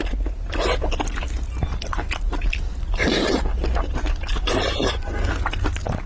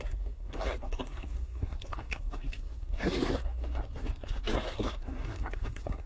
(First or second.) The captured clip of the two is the first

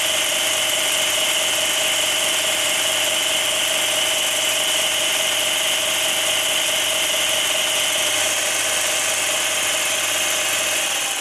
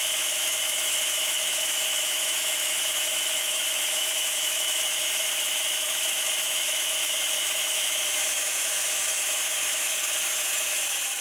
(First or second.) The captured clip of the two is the first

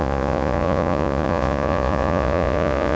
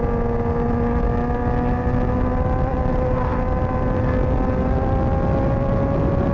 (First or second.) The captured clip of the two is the second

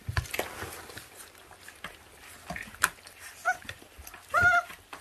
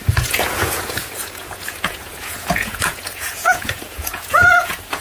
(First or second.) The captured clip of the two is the first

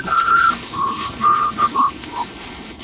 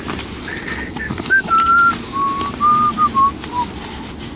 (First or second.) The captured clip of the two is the second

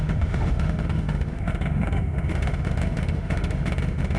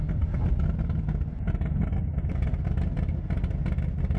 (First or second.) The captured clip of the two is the second